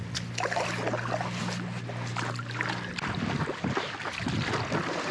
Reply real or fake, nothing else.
real